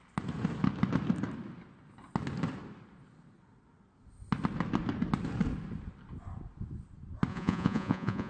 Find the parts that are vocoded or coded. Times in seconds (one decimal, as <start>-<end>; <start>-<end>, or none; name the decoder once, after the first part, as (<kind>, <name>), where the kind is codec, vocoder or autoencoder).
7.3-8.3 (vocoder, Vocos)